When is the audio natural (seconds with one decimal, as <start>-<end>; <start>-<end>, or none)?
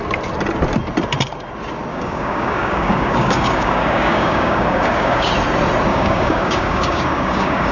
0.0-1.9; 5.3-5.9